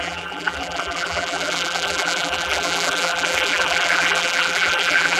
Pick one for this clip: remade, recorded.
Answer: remade